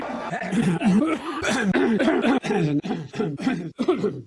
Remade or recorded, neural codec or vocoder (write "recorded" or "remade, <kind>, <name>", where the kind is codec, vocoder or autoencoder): recorded